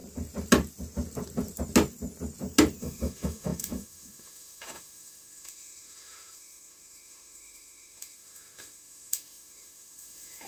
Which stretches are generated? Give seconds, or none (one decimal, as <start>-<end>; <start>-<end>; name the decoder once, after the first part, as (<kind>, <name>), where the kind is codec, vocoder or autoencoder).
2.8-10.5 (autoencoder, DAC-VAE)